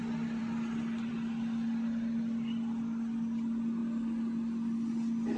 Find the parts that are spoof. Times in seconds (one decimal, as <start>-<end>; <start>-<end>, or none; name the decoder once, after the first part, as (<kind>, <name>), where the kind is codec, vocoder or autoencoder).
none